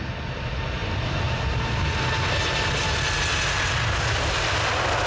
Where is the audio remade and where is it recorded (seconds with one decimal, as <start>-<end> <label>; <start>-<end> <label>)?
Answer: 0.0-5.1 recorded